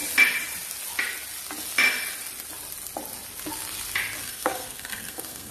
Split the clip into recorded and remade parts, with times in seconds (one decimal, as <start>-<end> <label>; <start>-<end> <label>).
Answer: 0.0-4.2 recorded; 4.2-5.5 remade